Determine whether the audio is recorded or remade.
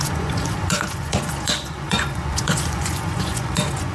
remade